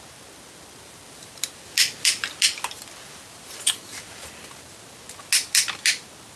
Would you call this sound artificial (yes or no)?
no